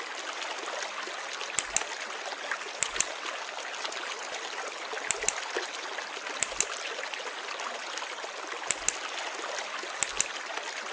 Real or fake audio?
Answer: real